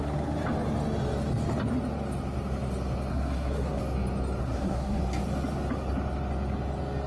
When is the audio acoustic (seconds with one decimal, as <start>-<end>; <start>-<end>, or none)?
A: 0.0-3.1; 3.8-4.4; 5.0-7.1